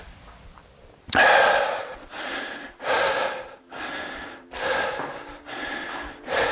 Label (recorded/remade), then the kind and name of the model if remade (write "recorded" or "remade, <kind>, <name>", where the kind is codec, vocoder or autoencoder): recorded